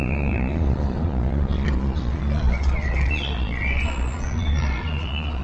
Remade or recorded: remade